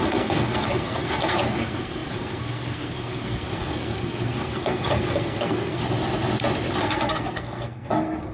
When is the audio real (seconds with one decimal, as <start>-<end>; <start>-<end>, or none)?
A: 5.8-6.8